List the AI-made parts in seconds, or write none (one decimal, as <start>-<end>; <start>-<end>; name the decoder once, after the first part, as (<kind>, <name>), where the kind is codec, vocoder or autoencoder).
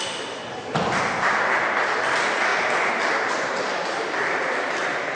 0.0-5.2 (vocoder, BigVGAN v2)